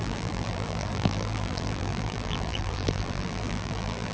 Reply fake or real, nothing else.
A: fake